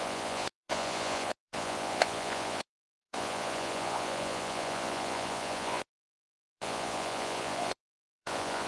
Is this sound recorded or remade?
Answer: remade